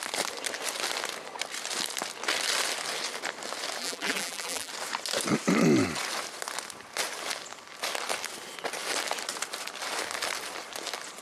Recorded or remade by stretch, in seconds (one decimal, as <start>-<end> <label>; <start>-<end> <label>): 0.0-3.8 recorded; 3.8-4.7 remade; 4.7-11.2 recorded